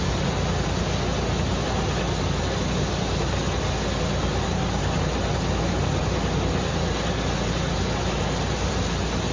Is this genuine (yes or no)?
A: yes